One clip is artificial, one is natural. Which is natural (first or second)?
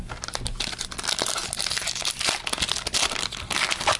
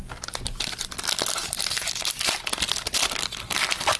first